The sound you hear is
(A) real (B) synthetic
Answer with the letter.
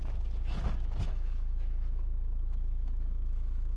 B